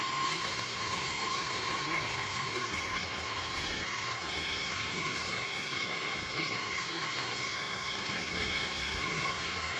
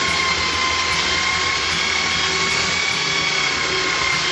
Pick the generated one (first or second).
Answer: first